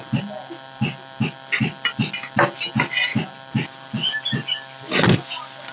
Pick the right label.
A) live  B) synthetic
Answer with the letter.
A